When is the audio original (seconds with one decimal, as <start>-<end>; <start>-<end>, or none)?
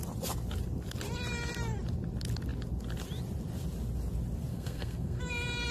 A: 0.0-4.5; 5.2-5.7